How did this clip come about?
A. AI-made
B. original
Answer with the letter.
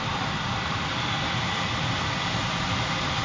A